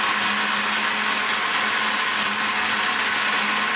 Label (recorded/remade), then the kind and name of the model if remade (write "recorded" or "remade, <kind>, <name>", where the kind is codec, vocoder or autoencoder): recorded